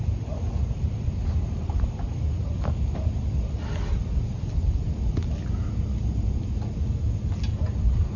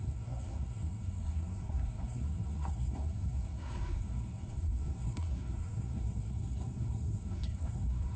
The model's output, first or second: second